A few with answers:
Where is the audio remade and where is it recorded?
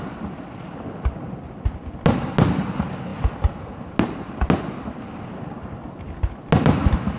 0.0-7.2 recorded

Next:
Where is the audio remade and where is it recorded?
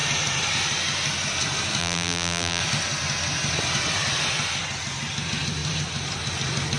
0.0-1.8 recorded; 1.8-2.6 remade; 2.6-6.8 recorded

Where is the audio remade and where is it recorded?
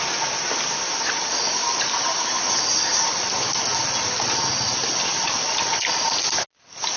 0.0-7.0 recorded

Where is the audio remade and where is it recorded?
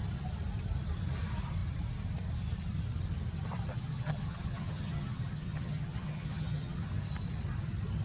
0.0-3.7 recorded; 3.7-6.9 remade; 6.9-8.0 recorded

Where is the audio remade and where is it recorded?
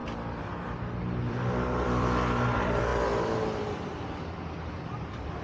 0.0-1.3 recorded; 1.3-5.4 remade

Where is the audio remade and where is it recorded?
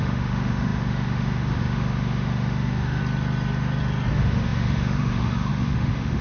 0.0-3.0 remade; 3.0-4.1 recorded; 4.1-6.2 remade